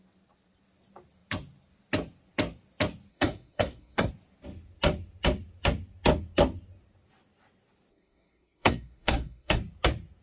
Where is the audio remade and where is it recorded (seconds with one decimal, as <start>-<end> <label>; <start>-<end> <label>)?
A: 0.0-3.1 recorded; 3.1-4.1 remade; 4.1-7.9 recorded; 7.9-9.6 remade; 9.6-10.2 recorded